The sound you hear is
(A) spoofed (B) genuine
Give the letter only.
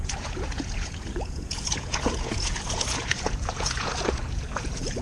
A